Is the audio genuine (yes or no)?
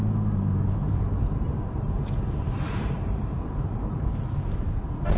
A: no